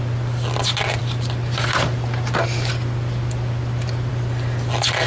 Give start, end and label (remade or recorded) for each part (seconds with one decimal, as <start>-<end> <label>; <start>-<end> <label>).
0.0-1.0 recorded; 1.0-4.1 remade; 4.1-5.1 recorded